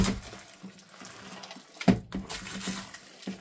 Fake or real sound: real